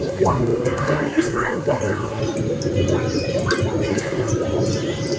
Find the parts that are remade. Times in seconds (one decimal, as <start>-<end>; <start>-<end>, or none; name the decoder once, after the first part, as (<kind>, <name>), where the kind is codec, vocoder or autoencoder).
0.0-2.2 (codec, SNAC); 3.9-4.3